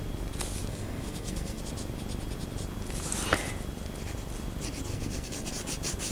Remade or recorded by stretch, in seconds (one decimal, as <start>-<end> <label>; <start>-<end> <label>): 0.0-0.7 recorded; 0.7-1.6 remade; 1.6-4.9 recorded; 4.9-5.5 remade; 5.5-6.1 recorded